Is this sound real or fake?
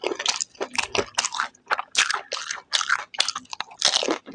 real